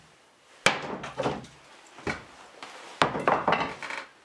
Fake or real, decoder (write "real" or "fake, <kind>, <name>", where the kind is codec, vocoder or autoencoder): real